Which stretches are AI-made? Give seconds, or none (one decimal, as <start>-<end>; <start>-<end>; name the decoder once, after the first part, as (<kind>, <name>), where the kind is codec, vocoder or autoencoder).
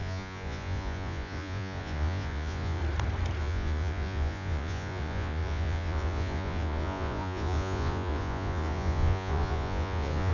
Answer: 0.0-2.8 (vocoder, Vocos); 3.4-10.3